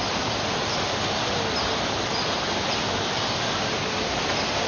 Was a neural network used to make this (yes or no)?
no